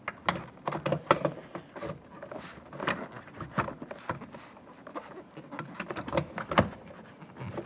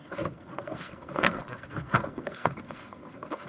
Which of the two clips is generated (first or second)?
second